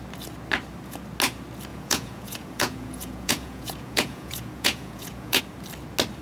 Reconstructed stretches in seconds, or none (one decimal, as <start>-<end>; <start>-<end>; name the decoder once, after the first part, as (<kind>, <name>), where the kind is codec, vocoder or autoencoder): 1.7-5.4 (vocoder, Vocos)